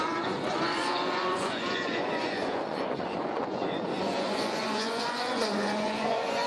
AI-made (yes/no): yes